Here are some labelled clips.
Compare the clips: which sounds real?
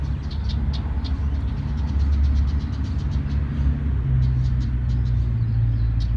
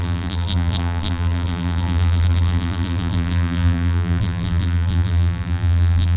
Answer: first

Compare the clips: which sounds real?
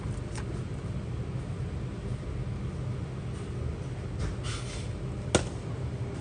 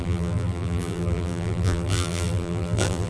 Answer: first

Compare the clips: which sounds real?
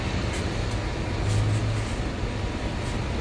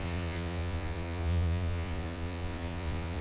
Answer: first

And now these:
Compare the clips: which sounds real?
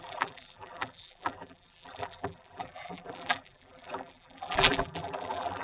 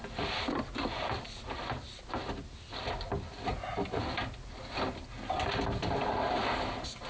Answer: second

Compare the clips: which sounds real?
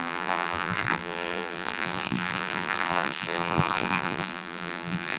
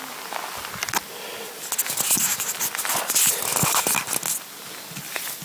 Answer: second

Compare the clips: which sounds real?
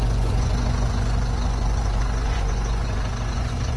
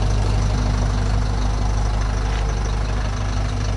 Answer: second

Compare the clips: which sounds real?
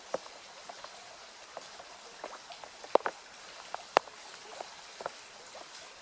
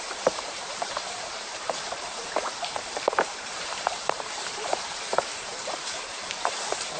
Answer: first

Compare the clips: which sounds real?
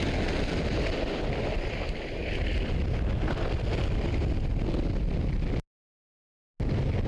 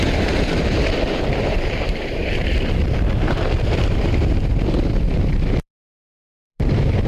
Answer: first